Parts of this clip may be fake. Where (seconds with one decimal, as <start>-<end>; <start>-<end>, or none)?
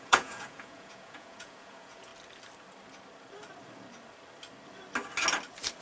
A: 0.0-2.1